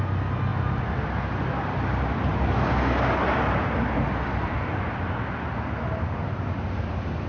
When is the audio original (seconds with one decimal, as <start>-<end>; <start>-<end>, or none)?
0.0-7.3